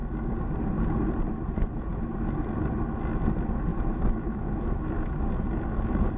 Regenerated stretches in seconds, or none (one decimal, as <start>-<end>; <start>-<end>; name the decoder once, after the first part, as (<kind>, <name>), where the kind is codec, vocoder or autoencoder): 3.7-5.2 (autoencoder, DAC-VAE)